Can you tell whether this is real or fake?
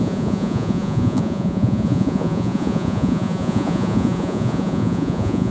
fake